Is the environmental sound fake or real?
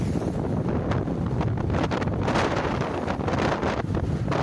fake